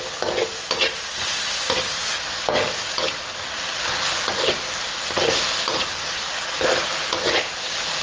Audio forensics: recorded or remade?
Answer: recorded